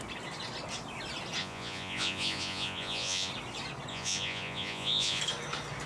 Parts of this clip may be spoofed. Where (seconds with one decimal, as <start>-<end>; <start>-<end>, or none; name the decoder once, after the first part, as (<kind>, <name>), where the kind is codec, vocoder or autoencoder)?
1.4-3.3 (vocoder, Vocos); 3.9-5.2